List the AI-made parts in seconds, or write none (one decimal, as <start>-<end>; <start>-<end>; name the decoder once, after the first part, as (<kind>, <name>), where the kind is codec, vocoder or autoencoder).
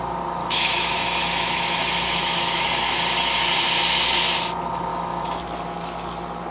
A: 0.4-2.7 (autoencoder, DAC-VAE); 4.9-5.4